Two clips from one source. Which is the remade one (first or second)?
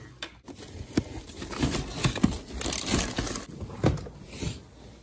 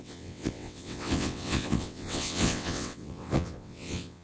second